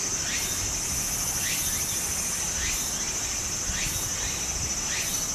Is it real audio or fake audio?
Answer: real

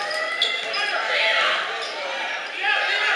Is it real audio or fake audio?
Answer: real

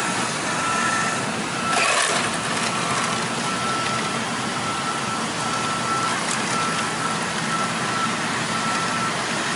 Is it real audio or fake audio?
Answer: real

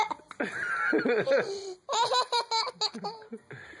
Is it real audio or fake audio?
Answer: real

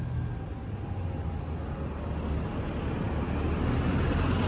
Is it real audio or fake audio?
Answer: real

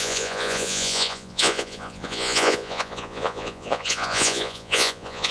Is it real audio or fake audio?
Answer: fake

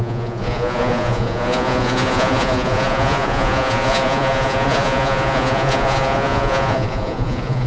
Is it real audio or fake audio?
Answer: fake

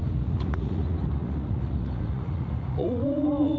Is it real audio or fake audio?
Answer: fake